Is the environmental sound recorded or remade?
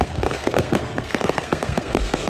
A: remade